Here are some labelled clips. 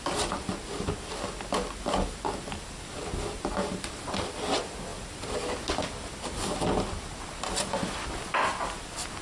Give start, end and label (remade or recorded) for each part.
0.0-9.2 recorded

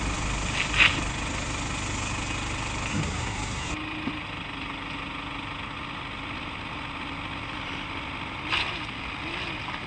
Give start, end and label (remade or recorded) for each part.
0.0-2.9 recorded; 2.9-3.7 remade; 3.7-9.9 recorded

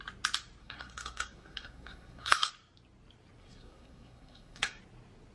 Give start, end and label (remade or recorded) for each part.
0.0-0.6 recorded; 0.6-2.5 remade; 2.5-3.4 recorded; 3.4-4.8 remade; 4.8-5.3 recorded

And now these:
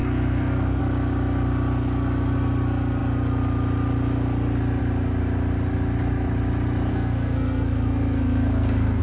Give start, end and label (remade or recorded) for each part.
0.0-0.8 remade; 0.8-6.9 recorded; 6.9-9.0 remade

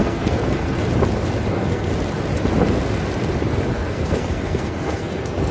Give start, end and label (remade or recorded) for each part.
0.0-0.8 remade; 0.8-1.5 recorded; 1.5-1.9 remade; 1.9-3.7 recorded; 3.7-5.5 remade